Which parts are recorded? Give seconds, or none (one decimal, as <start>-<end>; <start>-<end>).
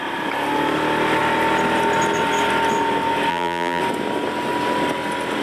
0.0-3.3; 3.8-5.4